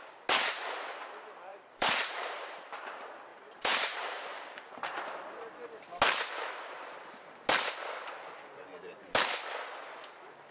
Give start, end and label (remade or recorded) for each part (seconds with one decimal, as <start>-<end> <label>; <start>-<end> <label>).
0.0-1.5 recorded; 1.5-2.6 remade; 2.6-3.3 recorded; 3.3-5.0 remade; 5.0-10.5 recorded